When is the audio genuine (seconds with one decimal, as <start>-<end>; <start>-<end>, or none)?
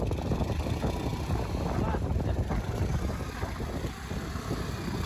0.0-5.1